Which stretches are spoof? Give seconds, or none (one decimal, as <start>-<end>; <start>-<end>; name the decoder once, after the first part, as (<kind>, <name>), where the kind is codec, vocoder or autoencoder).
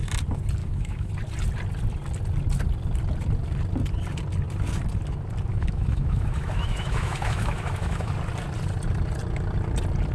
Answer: 0.6-1.1 (autoencoder, DAC-VAE); 5.5-8.1